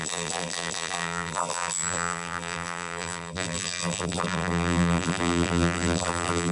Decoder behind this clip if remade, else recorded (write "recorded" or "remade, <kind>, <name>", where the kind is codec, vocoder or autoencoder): remade, vocoder, BigVGAN v2